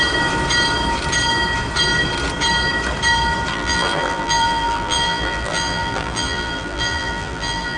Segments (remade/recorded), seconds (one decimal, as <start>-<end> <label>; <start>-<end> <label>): 0.0-3.5 recorded; 3.5-7.8 remade